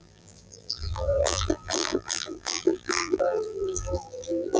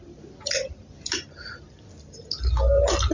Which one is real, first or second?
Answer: second